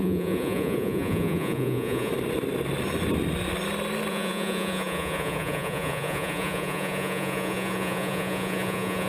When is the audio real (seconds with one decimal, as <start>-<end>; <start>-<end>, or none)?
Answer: 2.1-4.1